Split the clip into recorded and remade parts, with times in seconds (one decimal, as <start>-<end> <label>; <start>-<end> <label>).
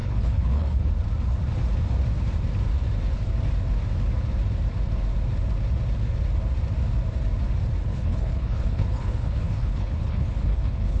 0.0-0.9 remade; 0.9-7.8 recorded; 7.8-11.0 remade